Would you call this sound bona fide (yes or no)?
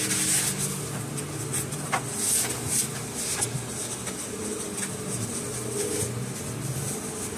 yes